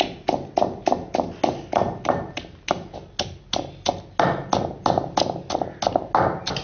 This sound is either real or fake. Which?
real